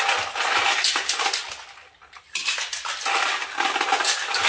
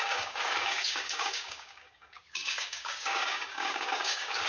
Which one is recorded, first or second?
first